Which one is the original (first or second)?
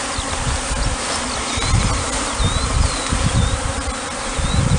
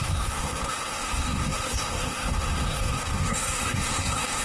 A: first